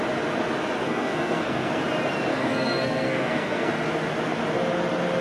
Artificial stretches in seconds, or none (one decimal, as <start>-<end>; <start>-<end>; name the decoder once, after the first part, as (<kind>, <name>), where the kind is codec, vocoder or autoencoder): 0.8-1.8 (codec, SNAC); 2.3-3.7